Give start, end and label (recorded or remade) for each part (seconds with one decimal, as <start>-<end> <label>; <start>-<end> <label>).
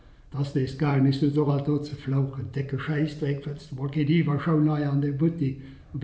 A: 0.0-1.5 remade; 1.5-1.9 recorded; 1.9-4.4 remade; 4.4-6.0 recorded